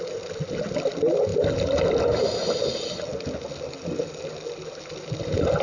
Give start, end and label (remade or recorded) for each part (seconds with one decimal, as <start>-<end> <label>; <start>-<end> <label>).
0.0-5.6 recorded